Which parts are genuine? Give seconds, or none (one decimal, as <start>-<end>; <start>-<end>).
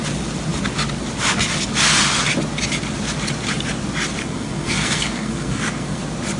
0.0-4.2; 6.0-6.4